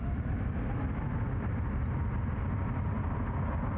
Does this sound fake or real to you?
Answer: real